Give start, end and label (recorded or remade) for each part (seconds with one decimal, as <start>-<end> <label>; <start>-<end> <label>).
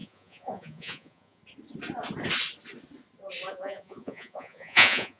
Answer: 0.0-1.4 remade; 1.4-3.5 recorded; 3.5-5.2 remade